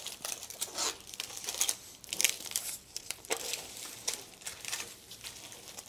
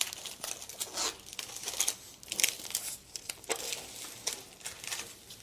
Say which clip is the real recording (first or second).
second